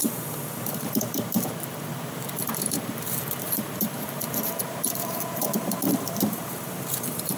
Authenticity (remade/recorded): remade